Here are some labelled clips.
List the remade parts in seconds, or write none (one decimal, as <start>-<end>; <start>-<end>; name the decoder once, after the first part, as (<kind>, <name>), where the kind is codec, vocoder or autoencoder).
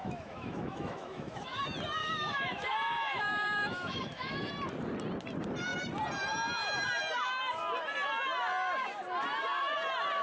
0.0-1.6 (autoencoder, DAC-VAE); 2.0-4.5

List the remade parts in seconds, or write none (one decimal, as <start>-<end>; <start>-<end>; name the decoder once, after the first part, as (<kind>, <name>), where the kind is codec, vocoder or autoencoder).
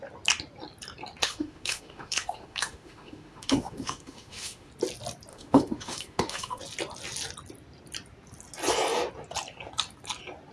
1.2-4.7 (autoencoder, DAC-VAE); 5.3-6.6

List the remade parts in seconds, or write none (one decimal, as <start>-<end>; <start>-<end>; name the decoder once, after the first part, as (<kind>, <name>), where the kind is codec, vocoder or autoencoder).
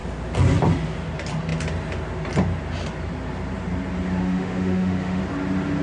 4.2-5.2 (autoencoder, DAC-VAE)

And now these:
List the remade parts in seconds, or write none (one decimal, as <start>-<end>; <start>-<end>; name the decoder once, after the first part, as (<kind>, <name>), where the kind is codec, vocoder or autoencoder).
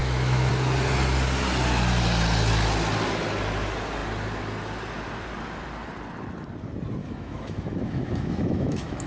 0.0-0.5 (autoencoder, DAC-VAE); 7.0-9.1